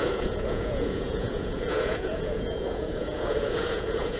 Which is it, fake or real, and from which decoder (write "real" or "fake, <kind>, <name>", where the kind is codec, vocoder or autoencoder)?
fake, vocoder, Vocos